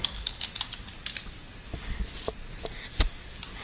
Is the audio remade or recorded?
recorded